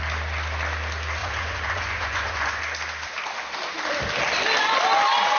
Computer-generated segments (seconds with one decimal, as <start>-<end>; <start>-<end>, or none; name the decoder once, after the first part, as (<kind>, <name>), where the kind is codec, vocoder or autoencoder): 1.2-2.6 (vocoder, Vocos)